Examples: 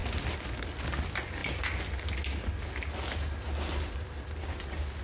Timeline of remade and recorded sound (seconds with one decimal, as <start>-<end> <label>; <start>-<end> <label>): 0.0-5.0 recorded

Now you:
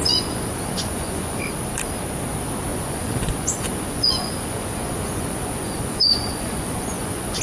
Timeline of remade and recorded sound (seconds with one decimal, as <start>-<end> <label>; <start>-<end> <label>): 0.0-1.4 remade; 1.4-2.7 recorded; 2.7-7.4 remade

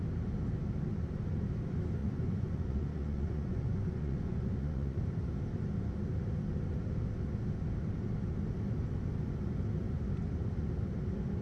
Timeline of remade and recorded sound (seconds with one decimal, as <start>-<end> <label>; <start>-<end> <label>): 0.0-2.0 recorded; 2.0-5.0 remade; 5.0-11.4 recorded

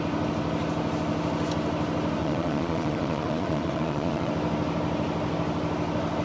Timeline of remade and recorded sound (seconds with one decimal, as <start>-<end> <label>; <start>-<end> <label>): 0.0-2.2 recorded; 2.2-4.3 remade; 4.3-6.2 recorded

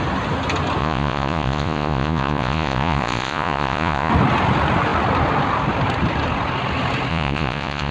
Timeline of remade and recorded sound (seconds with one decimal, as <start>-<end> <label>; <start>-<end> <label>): 0.0-0.8 recorded; 0.8-4.1 remade; 4.1-7.1 recorded; 7.1-7.9 remade

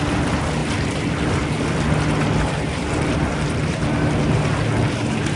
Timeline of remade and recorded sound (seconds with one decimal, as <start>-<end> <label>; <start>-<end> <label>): 0.0-5.4 recorded

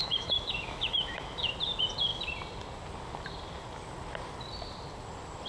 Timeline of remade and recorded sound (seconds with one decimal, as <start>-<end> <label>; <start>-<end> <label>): 0.0-1.5 remade; 1.5-5.5 recorded